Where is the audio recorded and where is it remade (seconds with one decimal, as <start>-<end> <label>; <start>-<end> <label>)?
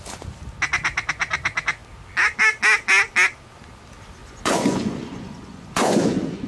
0.0-4.2 recorded; 4.2-6.5 remade